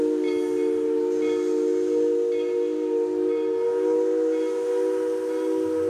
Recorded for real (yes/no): yes